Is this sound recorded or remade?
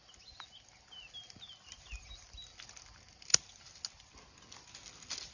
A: recorded